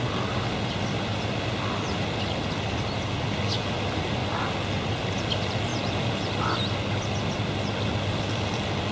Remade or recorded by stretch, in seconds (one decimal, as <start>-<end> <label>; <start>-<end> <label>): 0.0-8.9 recorded